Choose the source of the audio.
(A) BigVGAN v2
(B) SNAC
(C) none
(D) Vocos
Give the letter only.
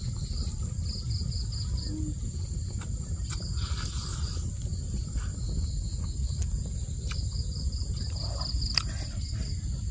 C